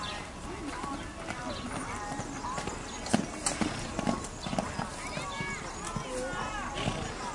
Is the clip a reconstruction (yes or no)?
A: no